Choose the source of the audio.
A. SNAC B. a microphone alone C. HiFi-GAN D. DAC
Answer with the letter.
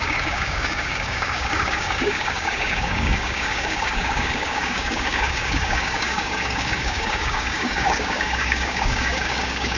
D